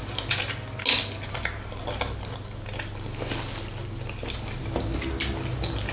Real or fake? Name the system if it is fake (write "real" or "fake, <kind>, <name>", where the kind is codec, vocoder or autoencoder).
real